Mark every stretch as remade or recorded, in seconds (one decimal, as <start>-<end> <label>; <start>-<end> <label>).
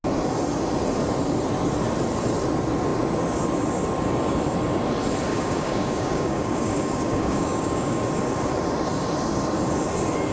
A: 0.0-5.3 recorded; 5.3-8.0 remade; 8.0-10.3 recorded